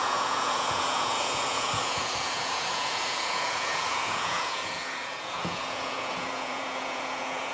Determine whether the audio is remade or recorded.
remade